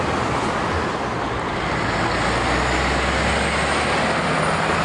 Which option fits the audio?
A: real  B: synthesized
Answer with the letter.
A